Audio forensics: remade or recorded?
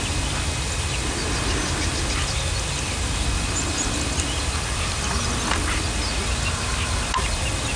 recorded